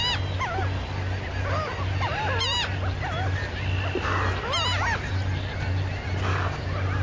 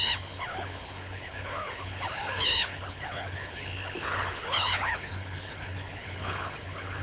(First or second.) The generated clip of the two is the second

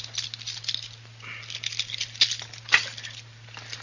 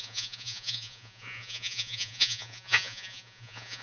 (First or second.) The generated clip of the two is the second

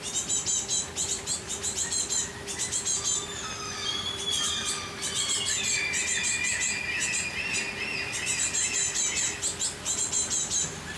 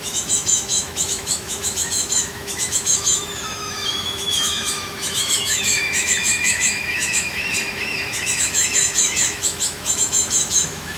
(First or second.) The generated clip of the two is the second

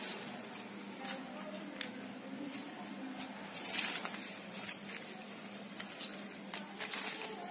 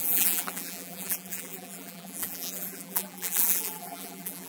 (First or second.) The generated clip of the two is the second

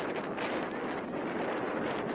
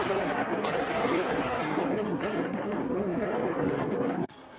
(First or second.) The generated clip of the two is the second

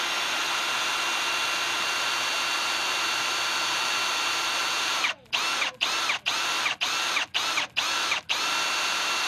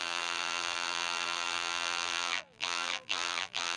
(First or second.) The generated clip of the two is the second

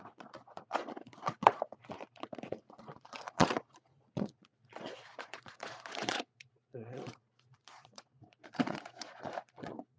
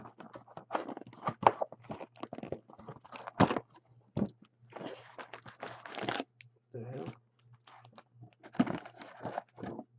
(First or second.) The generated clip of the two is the first